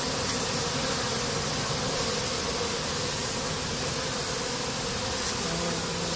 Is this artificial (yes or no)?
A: no